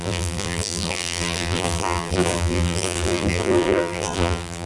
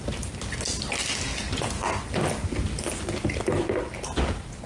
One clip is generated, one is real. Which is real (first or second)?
second